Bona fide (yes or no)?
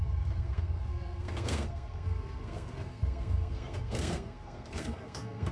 no